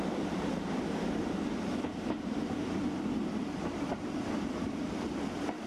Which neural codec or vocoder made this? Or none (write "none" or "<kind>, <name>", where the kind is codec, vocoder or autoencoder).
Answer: none